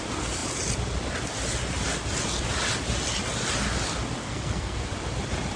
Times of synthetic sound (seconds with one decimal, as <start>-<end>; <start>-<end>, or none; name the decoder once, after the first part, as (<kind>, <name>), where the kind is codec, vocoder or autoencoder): 4.2-4.9 (codec, SNAC)